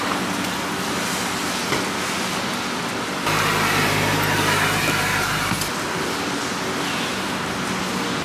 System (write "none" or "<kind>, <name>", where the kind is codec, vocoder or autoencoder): none